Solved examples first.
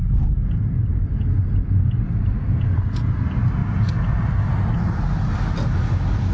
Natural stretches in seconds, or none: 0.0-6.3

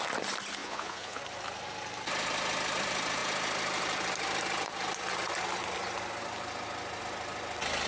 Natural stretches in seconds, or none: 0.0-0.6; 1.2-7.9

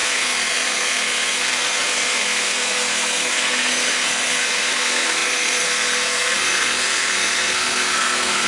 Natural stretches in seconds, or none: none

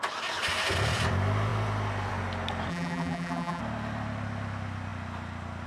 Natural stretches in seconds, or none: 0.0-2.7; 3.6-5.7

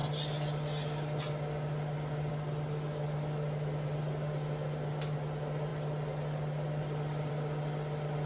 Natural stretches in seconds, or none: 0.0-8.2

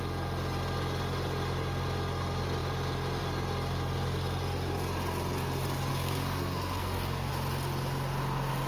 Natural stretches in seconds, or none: 0.0-5.9; 7.3-8.7

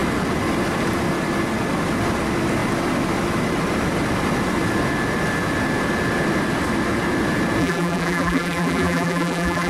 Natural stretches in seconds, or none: 0.0-7.6